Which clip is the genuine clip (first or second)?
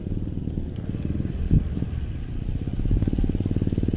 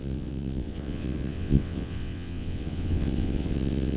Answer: first